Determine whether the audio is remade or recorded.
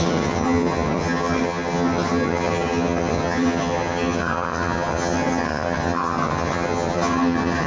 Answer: remade